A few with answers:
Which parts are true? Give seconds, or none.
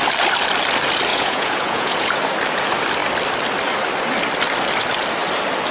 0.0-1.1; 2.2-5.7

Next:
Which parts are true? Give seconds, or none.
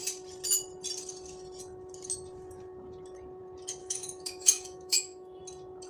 0.0-3.8; 5.4-5.9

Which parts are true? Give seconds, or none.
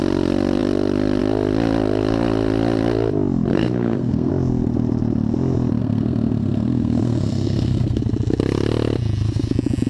0.0-3.5; 4.3-5.8; 8.0-9.9